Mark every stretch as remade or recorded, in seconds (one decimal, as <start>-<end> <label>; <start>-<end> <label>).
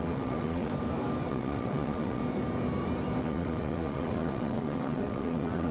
0.0-0.7 remade; 0.7-1.3 recorded; 1.3-2.2 remade; 2.2-3.2 recorded; 3.2-5.7 remade